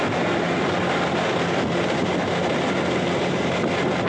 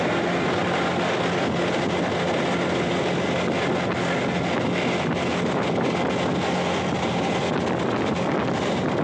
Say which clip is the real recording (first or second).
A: second